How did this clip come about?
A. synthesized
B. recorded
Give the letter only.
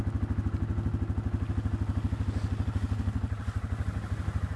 B